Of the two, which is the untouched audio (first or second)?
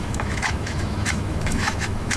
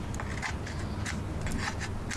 second